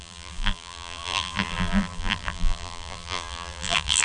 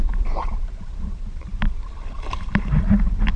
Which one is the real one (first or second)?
second